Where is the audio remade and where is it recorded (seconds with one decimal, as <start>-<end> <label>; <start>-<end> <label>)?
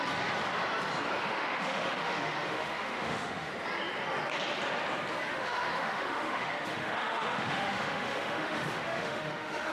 0.0-1.2 recorded; 1.2-3.5 remade; 3.5-5.3 recorded; 5.3-9.7 remade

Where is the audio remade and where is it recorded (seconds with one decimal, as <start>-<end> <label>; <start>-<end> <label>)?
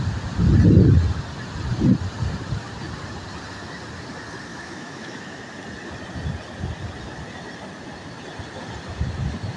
0.0-4.5 recorded; 4.5-5.4 remade; 5.4-9.6 recorded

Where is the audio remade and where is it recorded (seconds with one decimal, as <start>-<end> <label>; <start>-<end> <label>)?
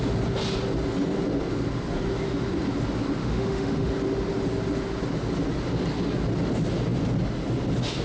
0.0-3.2 recorded; 3.2-3.9 remade; 3.9-8.0 recorded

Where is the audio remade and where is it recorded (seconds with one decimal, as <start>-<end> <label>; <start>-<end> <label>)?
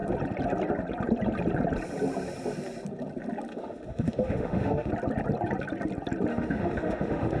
0.0-3.5 recorded; 3.5-4.9 remade; 4.9-6.3 recorded; 6.3-7.4 remade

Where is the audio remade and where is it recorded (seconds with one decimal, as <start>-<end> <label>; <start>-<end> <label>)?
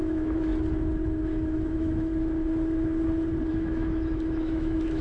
0.0-0.5 remade; 0.5-1.2 recorded; 1.2-2.1 remade; 2.1-3.5 recorded; 3.5-5.0 remade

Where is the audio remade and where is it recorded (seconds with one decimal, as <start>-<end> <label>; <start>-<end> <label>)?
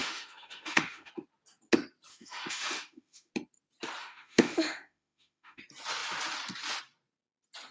0.0-1.1 remade; 1.1-2.1 recorded; 2.1-3.3 remade; 3.3-4.0 recorded; 4.0-5.6 remade; 5.6-7.7 recorded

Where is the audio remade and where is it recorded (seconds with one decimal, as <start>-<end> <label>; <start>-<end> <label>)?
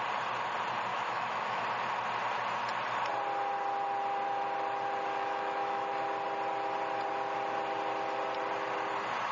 0.0-0.9 recorded; 0.9-1.6 remade; 1.6-5.2 recorded; 5.2-5.9 remade; 5.9-9.3 recorded